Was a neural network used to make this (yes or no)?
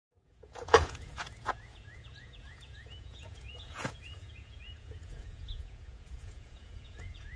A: yes